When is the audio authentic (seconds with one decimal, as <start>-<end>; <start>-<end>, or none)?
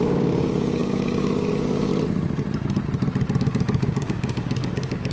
1.9-3.4